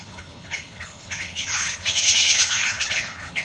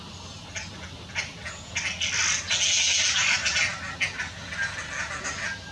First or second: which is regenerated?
first